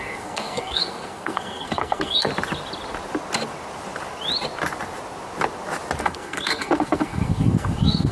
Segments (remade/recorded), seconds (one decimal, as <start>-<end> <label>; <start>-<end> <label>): 0.0-2.3 remade; 2.3-6.0 recorded; 6.0-8.1 remade